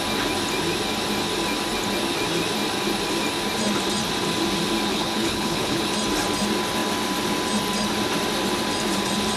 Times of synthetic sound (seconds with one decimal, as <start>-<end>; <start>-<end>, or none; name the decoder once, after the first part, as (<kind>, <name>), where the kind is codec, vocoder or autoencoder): 4.9-5.8 (codec, HILCodec)